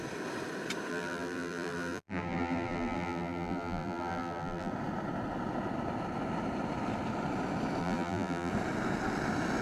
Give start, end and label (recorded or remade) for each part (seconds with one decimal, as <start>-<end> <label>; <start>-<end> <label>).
0.0-0.9 recorded; 0.9-4.7 remade; 4.7-7.8 recorded; 7.8-8.5 remade; 8.5-9.6 recorded